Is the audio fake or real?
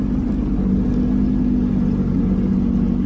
real